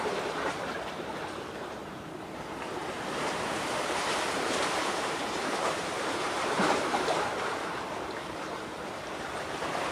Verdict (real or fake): fake